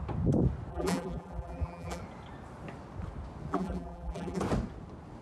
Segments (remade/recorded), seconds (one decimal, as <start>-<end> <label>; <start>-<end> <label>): 0.0-0.7 recorded; 0.7-2.0 remade; 2.0-3.5 recorded; 3.5-4.4 remade; 4.4-5.2 recorded